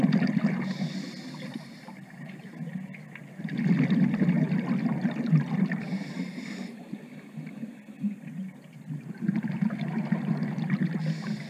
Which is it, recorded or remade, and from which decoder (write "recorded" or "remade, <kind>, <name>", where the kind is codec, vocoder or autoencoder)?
recorded